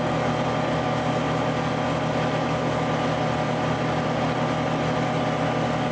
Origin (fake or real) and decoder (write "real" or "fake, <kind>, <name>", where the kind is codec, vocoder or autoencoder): real